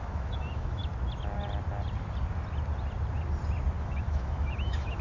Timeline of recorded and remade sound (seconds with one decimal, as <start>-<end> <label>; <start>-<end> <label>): 0.0-0.8 remade; 0.8-3.8 recorded; 3.8-5.0 remade